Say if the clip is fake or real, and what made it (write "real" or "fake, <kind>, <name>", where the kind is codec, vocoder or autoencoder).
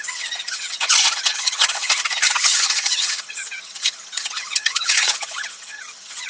fake, vocoder, HiFi-GAN